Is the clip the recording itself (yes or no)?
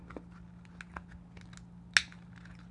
yes